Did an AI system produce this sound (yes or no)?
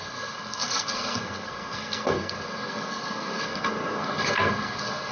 yes